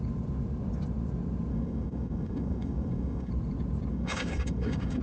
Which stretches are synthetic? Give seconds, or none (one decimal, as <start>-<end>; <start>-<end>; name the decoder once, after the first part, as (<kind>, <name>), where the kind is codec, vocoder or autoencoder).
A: 1.5-3.3 (codec, DAC); 3.9-5.0

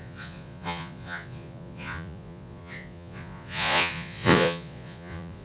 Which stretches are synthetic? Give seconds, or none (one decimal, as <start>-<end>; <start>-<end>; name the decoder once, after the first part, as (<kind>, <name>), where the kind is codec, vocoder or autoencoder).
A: 0.0-5.4 (vocoder, Vocos)